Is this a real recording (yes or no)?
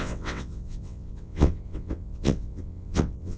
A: no